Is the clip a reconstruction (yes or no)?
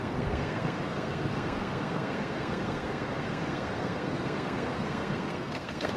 yes